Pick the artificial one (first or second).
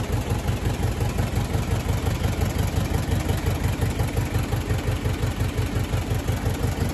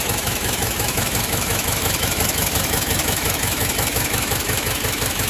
second